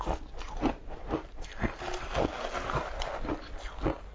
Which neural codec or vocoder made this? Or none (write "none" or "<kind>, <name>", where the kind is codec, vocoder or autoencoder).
none